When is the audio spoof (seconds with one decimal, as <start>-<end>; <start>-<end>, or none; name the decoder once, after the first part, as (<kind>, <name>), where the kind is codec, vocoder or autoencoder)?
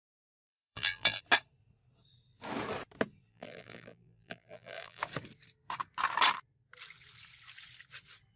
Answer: 0.0-1.2 (vocoder, BigVGAN v2); 3.3-5.0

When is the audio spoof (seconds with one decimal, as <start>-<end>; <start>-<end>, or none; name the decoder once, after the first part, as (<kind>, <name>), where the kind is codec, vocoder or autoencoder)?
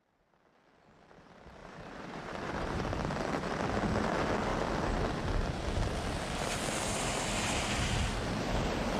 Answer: 1.6-2.8 (vocoder, BigVGAN v2)